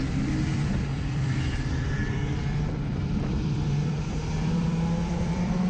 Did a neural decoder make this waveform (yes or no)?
yes